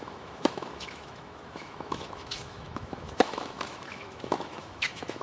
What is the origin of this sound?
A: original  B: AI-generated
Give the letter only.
B